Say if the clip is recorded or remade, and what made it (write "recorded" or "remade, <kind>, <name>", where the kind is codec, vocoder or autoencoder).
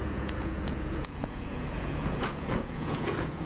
remade, vocoder, Vocos